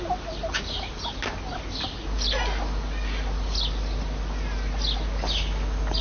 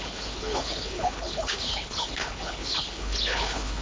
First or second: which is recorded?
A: first